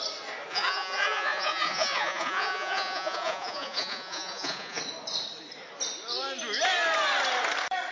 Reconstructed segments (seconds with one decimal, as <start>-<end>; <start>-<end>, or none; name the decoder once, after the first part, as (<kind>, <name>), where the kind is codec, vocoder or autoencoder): 0.5-4.8 (vocoder, Vocos)